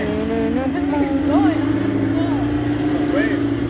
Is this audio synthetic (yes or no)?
no